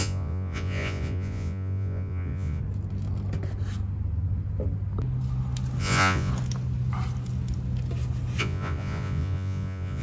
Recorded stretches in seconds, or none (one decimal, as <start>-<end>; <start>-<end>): 2.6-5.8; 6.3-8.4